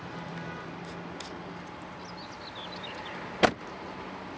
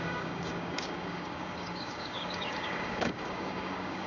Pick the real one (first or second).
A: first